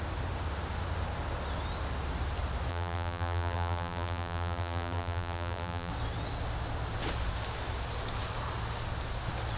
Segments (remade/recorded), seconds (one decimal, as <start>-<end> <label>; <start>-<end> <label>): 0.0-2.7 recorded; 2.7-5.9 remade; 5.9-9.6 recorded